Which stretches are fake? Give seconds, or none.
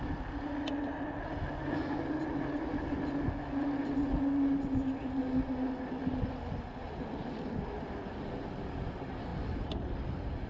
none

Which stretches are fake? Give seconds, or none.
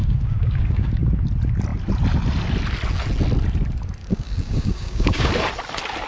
0.0-1.1; 4.0-5.3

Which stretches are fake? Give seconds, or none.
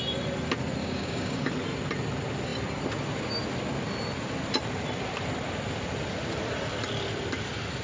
0.8-1.5